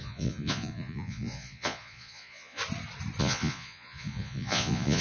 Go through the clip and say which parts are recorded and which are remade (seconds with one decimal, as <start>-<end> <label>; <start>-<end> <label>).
0.0-2.6 remade; 2.6-3.2 recorded; 3.2-5.0 remade